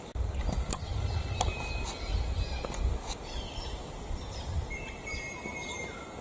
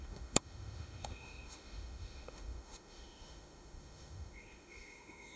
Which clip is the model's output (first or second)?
second